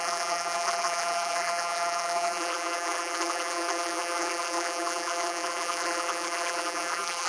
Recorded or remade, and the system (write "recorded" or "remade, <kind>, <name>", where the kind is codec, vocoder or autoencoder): remade, vocoder, BigVGAN v2